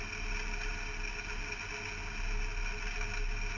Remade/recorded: recorded